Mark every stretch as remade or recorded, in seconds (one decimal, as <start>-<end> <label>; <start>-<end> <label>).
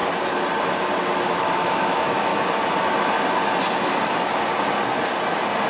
0.0-1.3 recorded; 1.3-2.3 remade; 2.3-5.7 recorded